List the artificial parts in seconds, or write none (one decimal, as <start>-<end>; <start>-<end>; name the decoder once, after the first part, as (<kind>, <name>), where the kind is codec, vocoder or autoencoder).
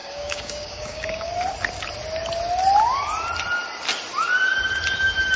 0.0-1.3 (codec, DAC)